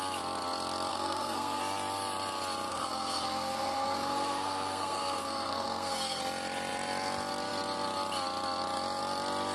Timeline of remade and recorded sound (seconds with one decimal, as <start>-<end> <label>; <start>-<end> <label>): 0.0-0.9 recorded; 0.9-1.6 remade; 1.6-2.7 recorded; 2.7-6.2 remade; 6.2-9.5 recorded